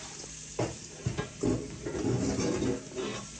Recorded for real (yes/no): yes